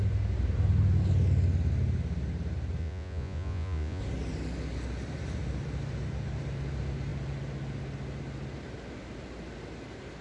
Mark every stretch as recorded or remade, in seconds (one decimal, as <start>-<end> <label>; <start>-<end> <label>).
0.0-2.8 recorded; 2.8-4.0 remade; 4.0-10.2 recorded